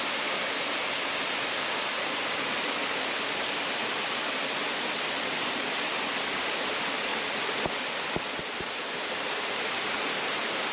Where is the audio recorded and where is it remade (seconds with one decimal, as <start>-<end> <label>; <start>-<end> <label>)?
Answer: 0.0-10.7 recorded